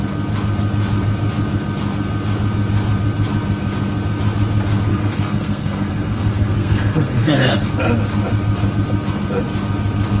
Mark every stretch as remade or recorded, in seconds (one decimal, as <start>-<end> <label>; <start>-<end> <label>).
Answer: 0.0-4.9 recorded; 4.9-7.7 remade; 7.7-10.2 recorded